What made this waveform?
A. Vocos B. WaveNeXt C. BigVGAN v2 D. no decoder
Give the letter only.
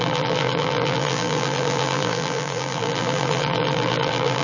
C